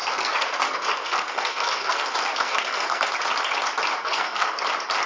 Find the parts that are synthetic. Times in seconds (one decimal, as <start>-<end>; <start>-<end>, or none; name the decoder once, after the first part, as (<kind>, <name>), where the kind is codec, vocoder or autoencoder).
0.0-3.1 (codec, SNAC); 4.0-4.6